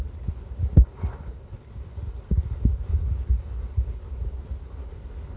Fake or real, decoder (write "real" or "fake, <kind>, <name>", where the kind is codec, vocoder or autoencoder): fake, codec, HILCodec